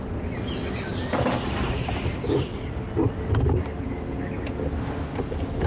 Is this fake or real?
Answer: real